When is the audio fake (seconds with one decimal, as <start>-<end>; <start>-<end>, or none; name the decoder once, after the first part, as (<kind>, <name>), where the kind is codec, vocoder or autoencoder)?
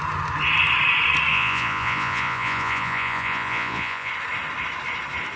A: 1.3-4.1 (vocoder, Vocos)